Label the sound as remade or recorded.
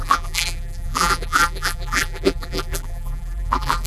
remade